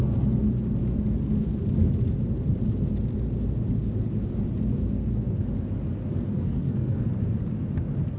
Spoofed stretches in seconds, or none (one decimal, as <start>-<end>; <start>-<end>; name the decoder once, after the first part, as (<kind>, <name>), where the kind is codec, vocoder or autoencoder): 6.3-7.1 (codec, SNAC)